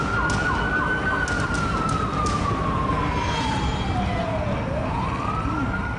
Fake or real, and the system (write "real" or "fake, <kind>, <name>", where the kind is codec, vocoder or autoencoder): real